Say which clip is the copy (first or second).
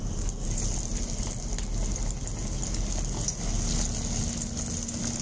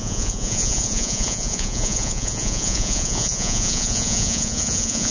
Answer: second